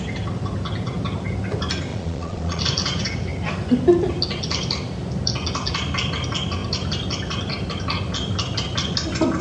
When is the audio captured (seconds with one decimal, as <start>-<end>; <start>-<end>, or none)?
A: 0.0-1.9; 2.6-9.4